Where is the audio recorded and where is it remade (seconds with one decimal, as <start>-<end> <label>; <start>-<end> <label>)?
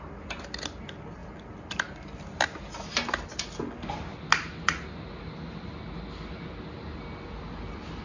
0.0-8.0 recorded